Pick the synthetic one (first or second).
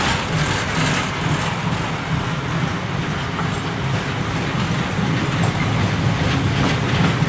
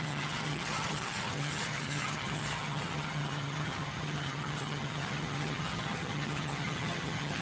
second